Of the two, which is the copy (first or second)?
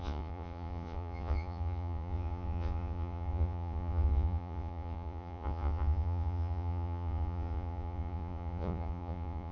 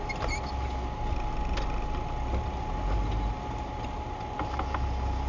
first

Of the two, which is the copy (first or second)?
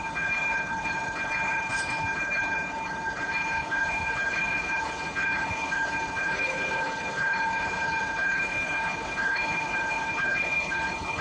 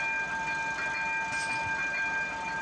first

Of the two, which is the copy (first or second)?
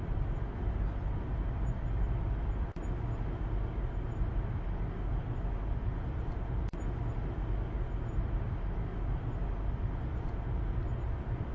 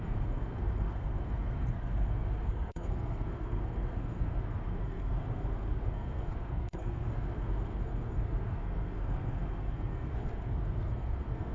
second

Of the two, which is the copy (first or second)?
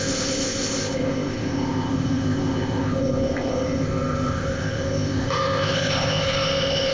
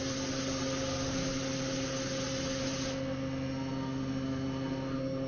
first